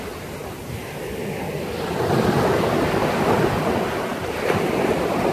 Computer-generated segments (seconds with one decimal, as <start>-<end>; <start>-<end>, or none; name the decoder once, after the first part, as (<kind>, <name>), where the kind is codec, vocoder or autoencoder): 4.1-5.3 (vocoder, BigVGAN v2)